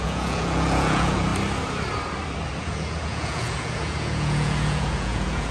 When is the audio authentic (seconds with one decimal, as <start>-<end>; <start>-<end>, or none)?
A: 1.3-2.6